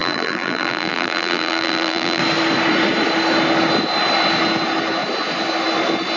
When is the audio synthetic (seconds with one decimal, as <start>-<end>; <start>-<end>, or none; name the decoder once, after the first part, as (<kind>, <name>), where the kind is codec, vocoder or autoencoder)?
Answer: 0.0-2.2 (vocoder, BigVGAN v2)